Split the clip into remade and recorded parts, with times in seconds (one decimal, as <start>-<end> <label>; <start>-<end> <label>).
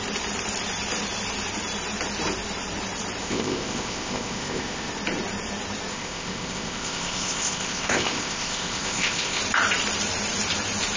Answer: 0.0-3.2 recorded; 3.2-4.9 remade; 4.9-5.9 recorded; 5.9-9.4 remade; 9.4-11.0 recorded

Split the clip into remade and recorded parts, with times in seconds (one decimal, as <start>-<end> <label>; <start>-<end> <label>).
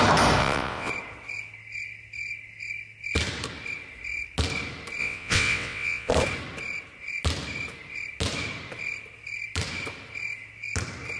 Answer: 0.0-0.4 recorded; 0.4-0.9 remade; 0.9-5.0 recorded; 5.0-6.1 remade; 6.1-11.2 recorded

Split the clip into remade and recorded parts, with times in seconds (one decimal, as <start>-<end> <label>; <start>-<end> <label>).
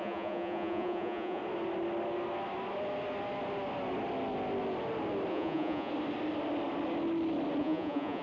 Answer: 0.0-1.4 remade; 1.4-5.3 recorded; 5.3-5.9 remade; 5.9-7.6 recorded; 7.6-8.2 remade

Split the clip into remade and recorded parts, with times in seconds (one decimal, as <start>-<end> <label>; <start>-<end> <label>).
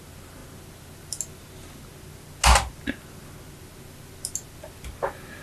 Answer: 0.0-5.4 recorded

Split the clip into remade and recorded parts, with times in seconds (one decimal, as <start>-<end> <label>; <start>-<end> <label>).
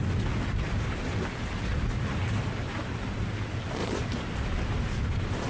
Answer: 0.0-2.2 recorded; 2.2-3.1 remade; 3.1-3.8 recorded; 3.8-4.4 remade; 4.4-5.5 recorded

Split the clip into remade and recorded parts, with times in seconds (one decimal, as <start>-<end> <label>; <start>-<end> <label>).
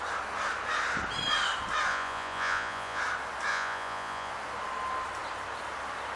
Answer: 0.0-1.9 recorded; 1.9-3.0 remade; 3.0-3.5 recorded; 3.5-4.3 remade; 4.3-6.2 recorded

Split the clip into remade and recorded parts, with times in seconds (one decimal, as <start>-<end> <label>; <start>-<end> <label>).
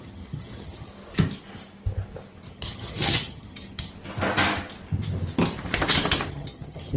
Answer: 0.0-0.9 remade; 0.9-2.5 recorded; 2.5-3.9 remade; 3.9-6.3 recorded; 6.3-7.0 remade